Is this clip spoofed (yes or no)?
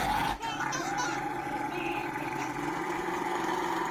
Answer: no